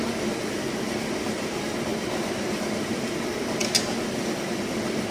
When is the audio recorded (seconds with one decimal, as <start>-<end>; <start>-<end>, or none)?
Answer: 0.0-5.1